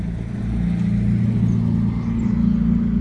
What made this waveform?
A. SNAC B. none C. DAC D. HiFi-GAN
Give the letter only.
B